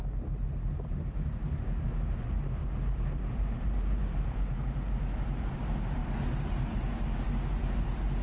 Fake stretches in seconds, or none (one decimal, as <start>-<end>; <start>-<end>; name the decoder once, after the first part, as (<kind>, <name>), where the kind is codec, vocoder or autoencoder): 0.6-6.0 (vocoder, BigVGAN v2); 6.7-8.2